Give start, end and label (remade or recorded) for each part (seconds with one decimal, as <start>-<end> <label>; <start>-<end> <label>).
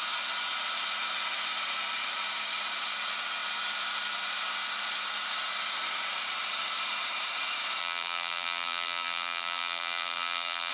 0.0-7.8 recorded; 7.8-10.7 remade